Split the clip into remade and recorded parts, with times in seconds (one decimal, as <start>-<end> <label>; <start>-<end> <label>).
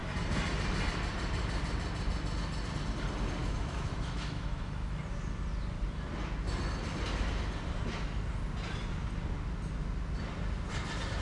0.0-3.4 recorded; 3.4-5.0 remade; 5.0-11.2 recorded